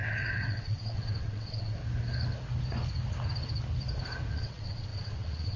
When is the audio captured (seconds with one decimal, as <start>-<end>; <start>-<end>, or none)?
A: 1.8-4.3